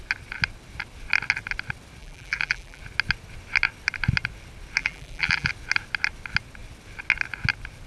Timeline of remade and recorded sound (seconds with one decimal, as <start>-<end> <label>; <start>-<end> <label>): 0.0-2.0 recorded; 2.0-2.8 remade; 2.8-4.8 recorded; 4.8-5.5 remade; 5.5-7.9 recorded